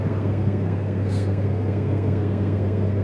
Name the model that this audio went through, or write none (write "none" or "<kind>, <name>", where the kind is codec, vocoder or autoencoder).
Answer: codec, SNAC